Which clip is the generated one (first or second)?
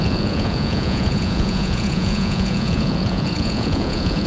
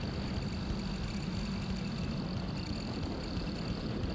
first